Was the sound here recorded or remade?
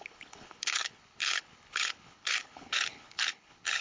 remade